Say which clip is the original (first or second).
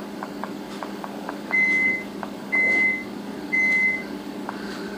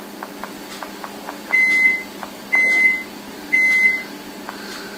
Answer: second